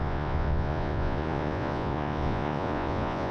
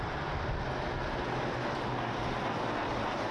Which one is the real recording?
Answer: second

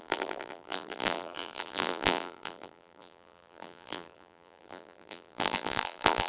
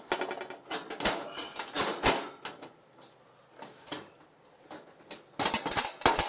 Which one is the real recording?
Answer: second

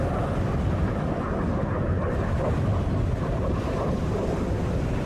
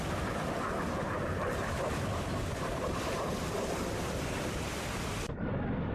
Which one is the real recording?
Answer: first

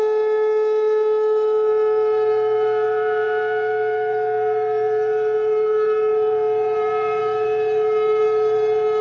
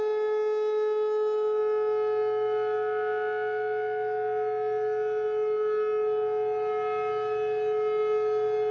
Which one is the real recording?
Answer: second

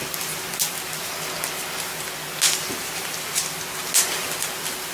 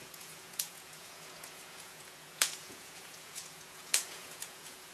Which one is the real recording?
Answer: first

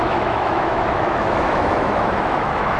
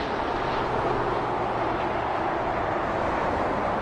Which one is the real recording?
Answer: second